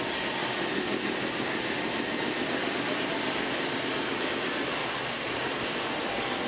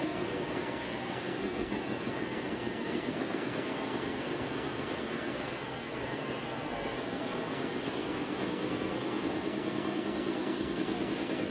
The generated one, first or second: second